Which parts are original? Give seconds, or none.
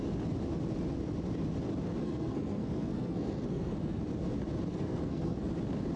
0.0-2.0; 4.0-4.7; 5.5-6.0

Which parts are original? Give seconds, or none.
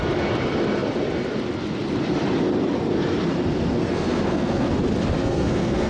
0.0-3.8; 4.7-5.2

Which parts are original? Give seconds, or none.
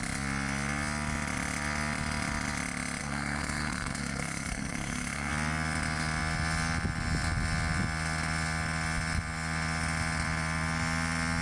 0.0-3.0; 5.3-11.4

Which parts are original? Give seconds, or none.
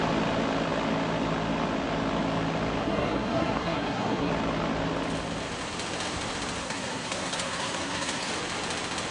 0.0-2.8; 4.3-6.6; 8.3-9.1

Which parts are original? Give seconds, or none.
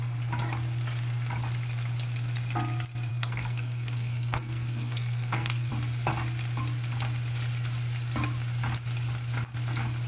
0.0-3.1; 5.7-10.1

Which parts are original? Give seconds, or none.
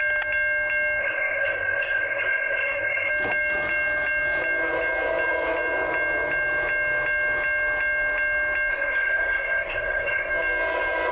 0.0-1.0; 3.1-8.7; 10.3-11.1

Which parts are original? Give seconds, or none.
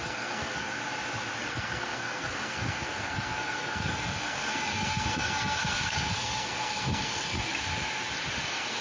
0.8-1.4; 7.4-8.4